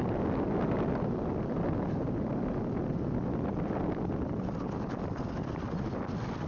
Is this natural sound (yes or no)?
yes